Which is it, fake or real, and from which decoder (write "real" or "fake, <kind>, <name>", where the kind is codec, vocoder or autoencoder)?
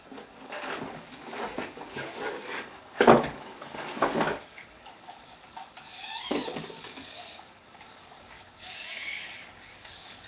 fake, codec, DAC